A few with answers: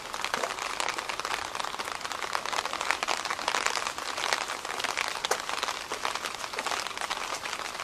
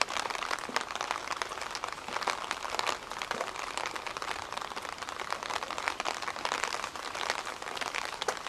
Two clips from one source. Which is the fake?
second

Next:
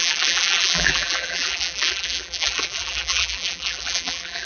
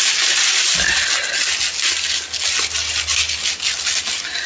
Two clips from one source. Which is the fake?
first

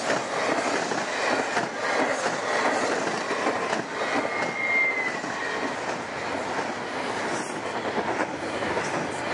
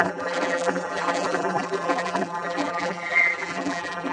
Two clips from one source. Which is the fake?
second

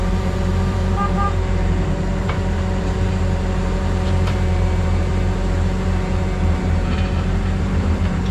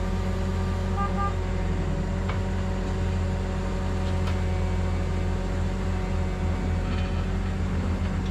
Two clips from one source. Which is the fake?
first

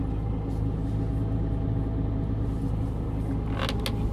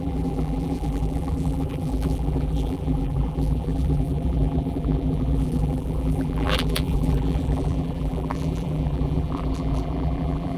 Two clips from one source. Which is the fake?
second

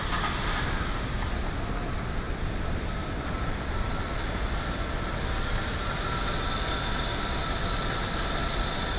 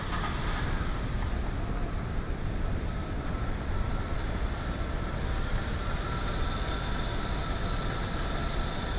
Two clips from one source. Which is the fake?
second